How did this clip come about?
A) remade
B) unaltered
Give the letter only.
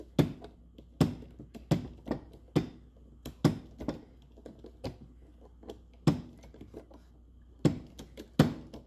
B